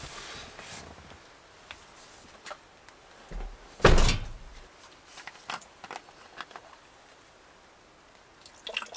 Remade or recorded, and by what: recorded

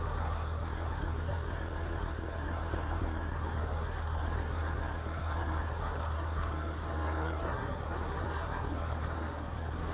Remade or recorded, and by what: remade, codec, SNAC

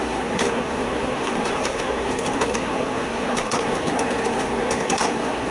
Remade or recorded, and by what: remade, codec, SNAC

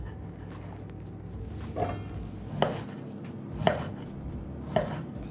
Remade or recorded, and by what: recorded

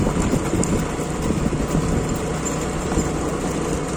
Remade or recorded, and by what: recorded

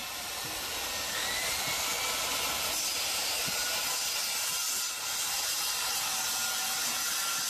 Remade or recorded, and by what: recorded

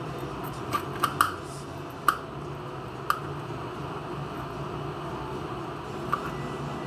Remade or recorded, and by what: recorded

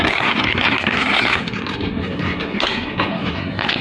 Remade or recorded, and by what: remade, codec, SNAC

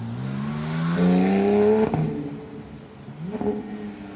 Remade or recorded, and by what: recorded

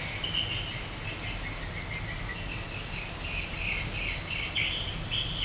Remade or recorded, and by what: recorded